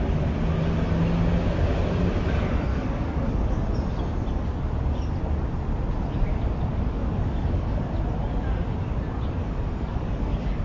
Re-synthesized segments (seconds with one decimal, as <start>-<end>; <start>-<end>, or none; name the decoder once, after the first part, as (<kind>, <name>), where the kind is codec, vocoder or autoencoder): 2.7-3.5 (codec, DAC); 6.7-7.8; 9.4-10.6